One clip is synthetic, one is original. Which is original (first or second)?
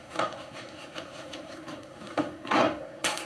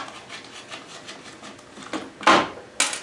second